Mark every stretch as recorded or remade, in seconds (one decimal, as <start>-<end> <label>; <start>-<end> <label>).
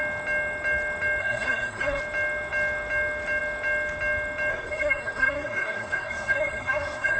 0.0-1.2 recorded; 1.2-2.0 remade; 2.0-4.5 recorded; 4.5-7.2 remade